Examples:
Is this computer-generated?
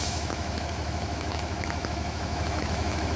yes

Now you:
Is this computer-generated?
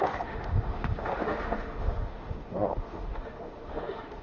yes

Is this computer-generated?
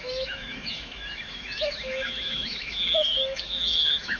yes